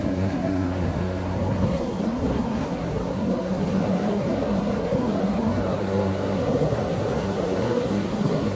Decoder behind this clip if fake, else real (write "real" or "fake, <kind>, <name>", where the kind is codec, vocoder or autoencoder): fake, codec, SNAC